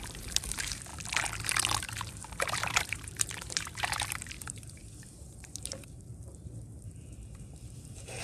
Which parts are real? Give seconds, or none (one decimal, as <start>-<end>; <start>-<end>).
0.9-1.8